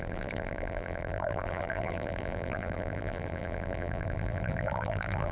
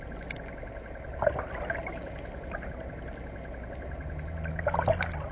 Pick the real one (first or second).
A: second